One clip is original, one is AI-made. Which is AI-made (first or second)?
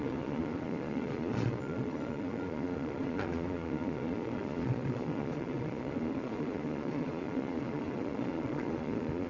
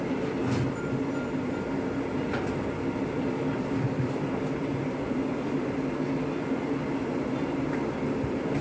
first